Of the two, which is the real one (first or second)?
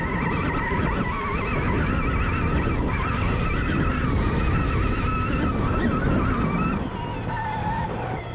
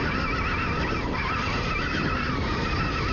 first